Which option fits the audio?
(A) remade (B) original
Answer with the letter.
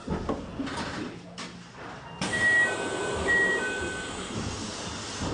B